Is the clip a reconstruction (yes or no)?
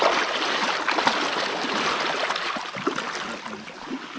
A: no